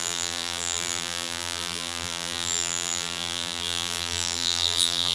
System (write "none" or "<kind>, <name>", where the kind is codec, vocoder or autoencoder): vocoder, BigVGAN v2